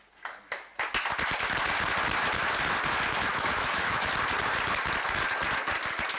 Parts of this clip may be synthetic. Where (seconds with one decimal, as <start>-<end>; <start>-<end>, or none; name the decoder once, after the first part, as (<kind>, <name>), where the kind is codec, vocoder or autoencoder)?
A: 3.3-4.1 (autoencoder, DAC-VAE)